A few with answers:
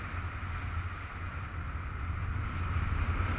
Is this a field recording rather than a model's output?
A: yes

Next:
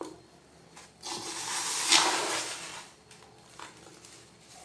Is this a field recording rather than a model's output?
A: yes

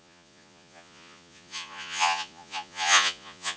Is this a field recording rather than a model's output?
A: no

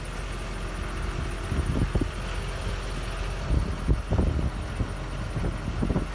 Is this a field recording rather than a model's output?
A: yes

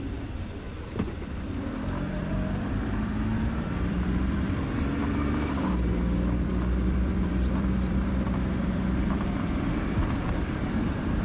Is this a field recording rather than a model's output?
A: no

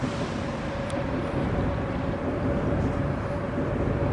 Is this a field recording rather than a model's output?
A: yes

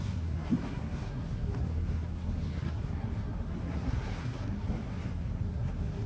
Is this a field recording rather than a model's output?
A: no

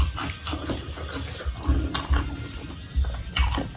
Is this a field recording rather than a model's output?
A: yes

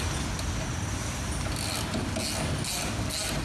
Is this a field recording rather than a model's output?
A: yes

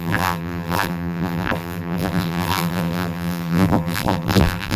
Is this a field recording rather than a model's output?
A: no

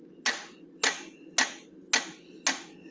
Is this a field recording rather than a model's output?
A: yes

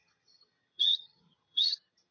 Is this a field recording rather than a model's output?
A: no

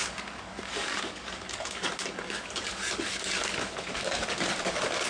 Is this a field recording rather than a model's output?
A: no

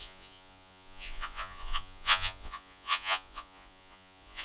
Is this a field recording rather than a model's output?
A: no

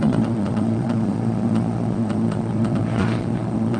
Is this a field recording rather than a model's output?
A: no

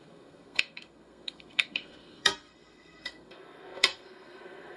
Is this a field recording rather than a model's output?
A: no